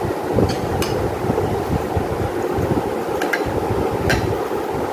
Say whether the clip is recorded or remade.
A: recorded